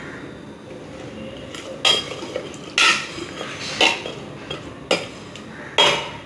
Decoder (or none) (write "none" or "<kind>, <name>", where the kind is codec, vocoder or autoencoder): none